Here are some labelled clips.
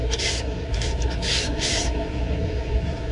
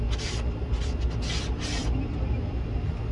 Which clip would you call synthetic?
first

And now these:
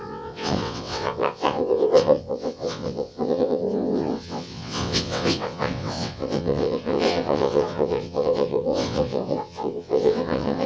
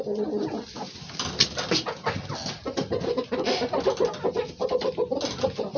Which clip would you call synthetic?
first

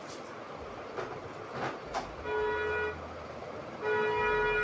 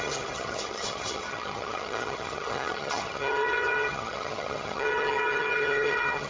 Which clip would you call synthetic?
second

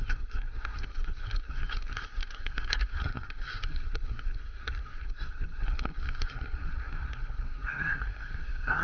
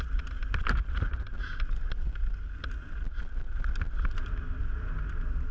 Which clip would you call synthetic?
first